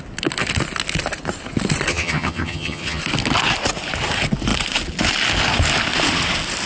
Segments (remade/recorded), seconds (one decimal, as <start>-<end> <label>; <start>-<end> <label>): 0.0-1.9 recorded; 1.9-3.0 remade; 3.0-6.7 recorded